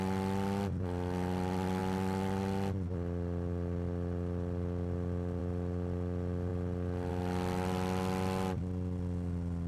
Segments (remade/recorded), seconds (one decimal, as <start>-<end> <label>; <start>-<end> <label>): 0.0-9.7 recorded